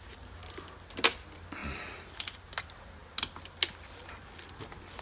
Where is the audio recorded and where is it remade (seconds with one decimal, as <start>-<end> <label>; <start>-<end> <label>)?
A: 0.0-5.0 recorded

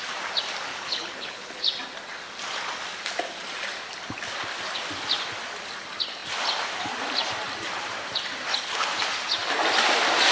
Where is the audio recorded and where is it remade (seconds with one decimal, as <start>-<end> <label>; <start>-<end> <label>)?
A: 0.0-0.7 recorded; 0.7-1.5 remade; 1.5-10.3 recorded